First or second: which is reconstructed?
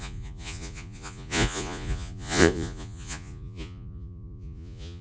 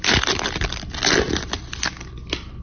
first